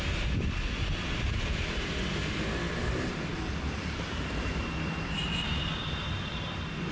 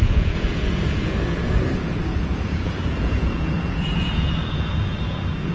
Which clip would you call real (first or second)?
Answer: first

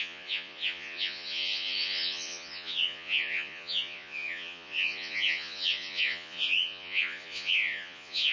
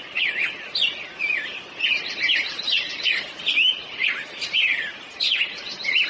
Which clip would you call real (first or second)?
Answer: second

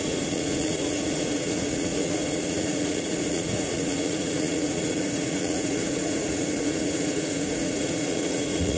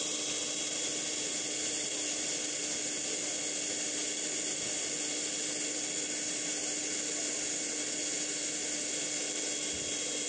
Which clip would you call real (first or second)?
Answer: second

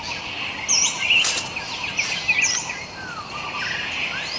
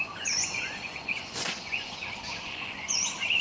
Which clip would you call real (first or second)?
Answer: first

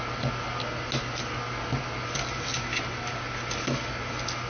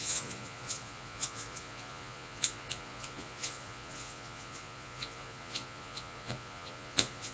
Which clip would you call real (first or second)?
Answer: first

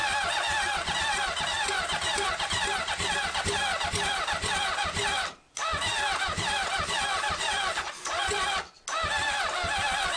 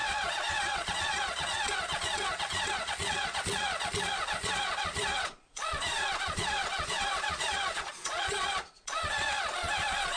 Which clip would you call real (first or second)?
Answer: first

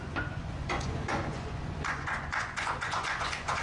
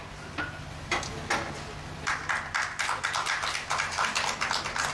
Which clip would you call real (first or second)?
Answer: second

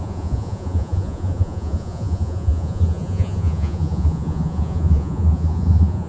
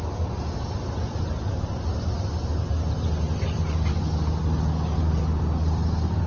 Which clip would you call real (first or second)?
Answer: second